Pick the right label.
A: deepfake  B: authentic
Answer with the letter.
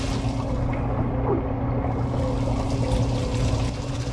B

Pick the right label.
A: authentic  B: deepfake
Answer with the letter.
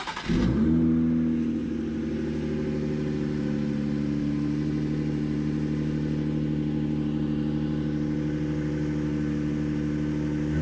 A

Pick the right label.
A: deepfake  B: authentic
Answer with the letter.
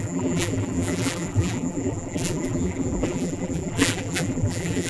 A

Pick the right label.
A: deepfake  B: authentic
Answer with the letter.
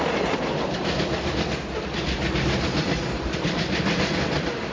B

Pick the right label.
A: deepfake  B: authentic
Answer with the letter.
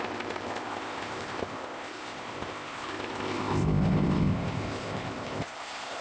A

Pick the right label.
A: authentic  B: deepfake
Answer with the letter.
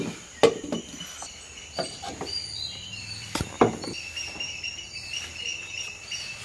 B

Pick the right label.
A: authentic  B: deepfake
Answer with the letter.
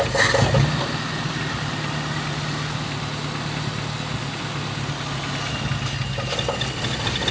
A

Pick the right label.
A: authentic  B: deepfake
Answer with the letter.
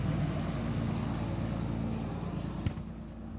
A